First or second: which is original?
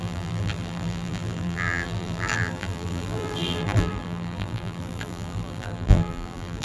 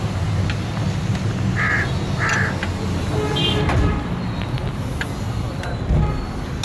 second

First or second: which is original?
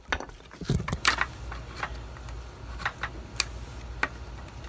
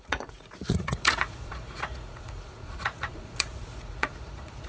first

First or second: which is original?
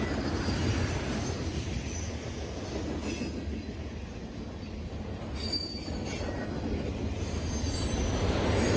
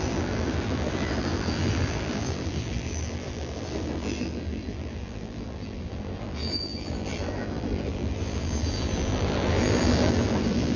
first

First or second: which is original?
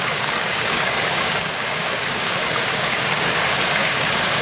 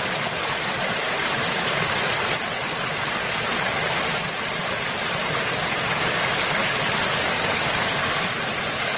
second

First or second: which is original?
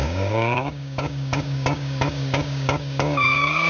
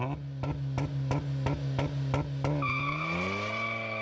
second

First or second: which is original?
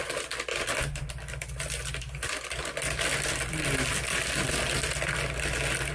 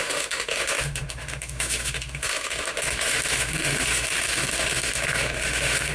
first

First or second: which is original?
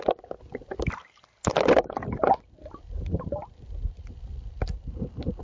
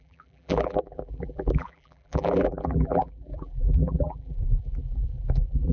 first